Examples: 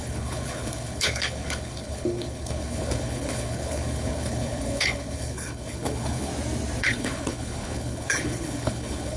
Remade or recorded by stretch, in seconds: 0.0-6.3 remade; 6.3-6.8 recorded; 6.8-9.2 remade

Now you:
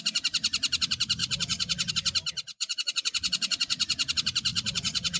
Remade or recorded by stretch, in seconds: 0.0-1.2 recorded; 1.2-1.9 remade; 1.9-2.5 recorded; 2.5-4.1 remade; 4.1-4.5 recorded; 4.5-5.2 remade

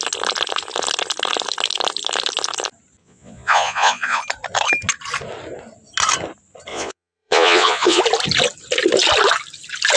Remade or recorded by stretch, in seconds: 0.0-3.0 recorded; 3.0-4.2 remade; 4.2-6.7 recorded; 6.7-8.0 remade; 8.0-10.0 recorded

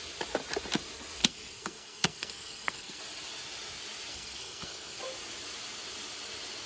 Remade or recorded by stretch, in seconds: 0.0-1.2 recorded; 1.2-3.0 remade; 3.0-4.1 recorded; 4.1-5.0 remade; 5.0-6.7 recorded

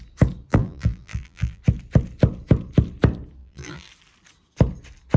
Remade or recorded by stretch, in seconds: 0.0-0.5 recorded; 0.5-1.6 remade; 1.6-3.4 recorded; 3.4-3.9 remade; 3.9-5.2 recorded

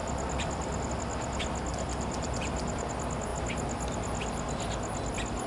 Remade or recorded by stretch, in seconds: 0.0-0.9 remade; 0.9-1.7 recorded; 1.7-2.9 remade; 2.9-5.5 recorded

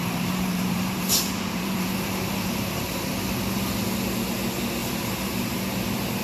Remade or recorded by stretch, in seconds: 0.0-3.1 remade; 3.1-4.8 recorded; 4.8-5.6 remade; 5.6-6.2 recorded